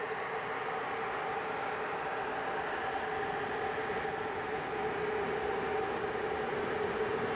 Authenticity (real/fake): real